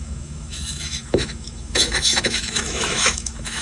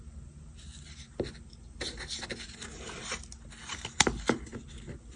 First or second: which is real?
second